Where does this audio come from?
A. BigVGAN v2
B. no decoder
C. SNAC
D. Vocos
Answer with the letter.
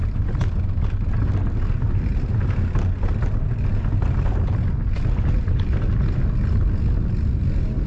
B